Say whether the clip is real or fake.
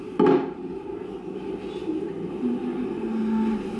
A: real